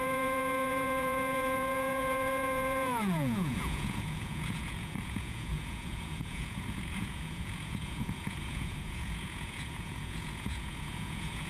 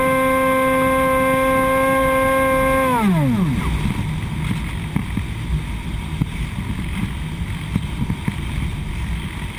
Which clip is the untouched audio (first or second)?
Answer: second